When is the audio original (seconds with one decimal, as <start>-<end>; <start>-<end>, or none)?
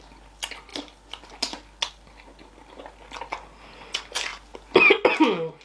0.0-5.6